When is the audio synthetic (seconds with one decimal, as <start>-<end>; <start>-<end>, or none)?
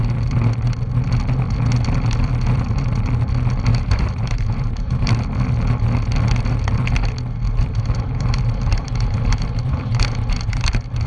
3.7-5.1; 7.6-10.6